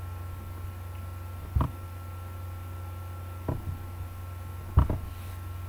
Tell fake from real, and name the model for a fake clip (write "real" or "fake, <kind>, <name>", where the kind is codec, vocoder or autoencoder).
real